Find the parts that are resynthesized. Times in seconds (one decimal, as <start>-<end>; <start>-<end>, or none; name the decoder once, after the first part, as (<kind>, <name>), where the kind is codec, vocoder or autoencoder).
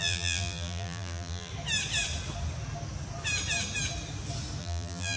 0.0-1.5 (vocoder, BigVGAN v2); 4.6-5.2